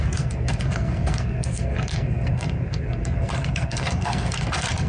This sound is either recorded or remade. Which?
remade